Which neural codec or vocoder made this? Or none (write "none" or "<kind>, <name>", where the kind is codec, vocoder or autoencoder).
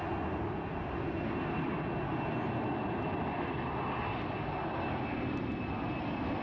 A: none